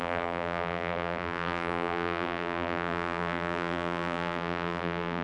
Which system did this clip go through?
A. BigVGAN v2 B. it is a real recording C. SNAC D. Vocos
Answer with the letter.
A